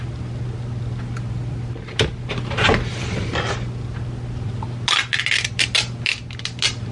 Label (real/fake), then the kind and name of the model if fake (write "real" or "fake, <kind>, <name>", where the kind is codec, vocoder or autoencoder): real